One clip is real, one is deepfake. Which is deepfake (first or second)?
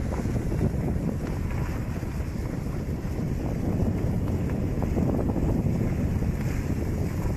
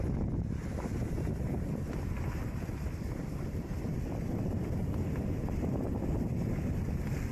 second